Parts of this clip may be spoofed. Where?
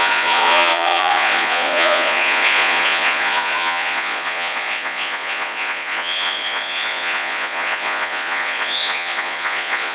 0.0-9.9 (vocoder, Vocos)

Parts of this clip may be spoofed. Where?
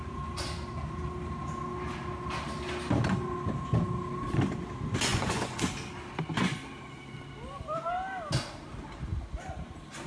5.1-5.6 (vocoder, Vocos)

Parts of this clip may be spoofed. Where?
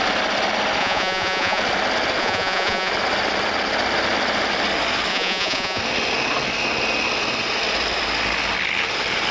0.8-1.6 (vocoder, Vocos); 2.2-2.9; 5.1-5.8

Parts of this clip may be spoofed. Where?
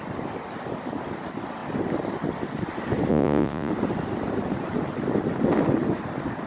3.1-3.7 (vocoder, Vocos)